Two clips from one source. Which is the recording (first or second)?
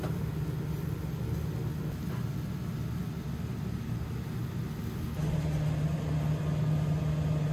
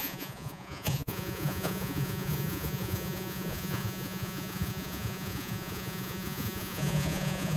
first